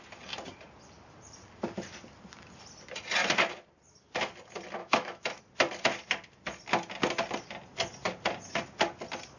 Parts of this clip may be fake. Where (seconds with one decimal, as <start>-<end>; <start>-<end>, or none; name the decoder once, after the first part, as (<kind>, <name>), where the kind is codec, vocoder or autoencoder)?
4.8-5.4 (autoencoder, DAC-VAE)